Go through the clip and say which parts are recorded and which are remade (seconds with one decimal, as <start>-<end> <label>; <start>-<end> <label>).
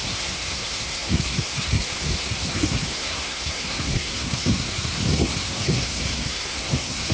0.0-7.1 remade